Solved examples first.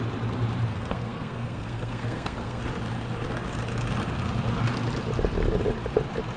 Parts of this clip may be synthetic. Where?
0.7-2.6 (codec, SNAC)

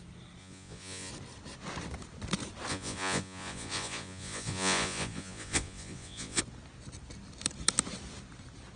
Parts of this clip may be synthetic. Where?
0.4-1.1 (vocoder, Vocos); 2.7-6.4

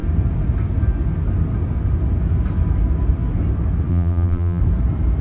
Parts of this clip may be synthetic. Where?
3.9-4.6 (vocoder, BigVGAN v2)

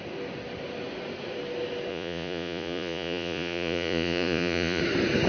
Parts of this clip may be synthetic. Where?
1.9-4.8 (vocoder, Vocos)

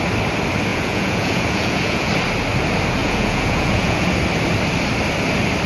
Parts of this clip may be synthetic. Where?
0.7-2.1 (vocoder, Vocos); 3.0-4.1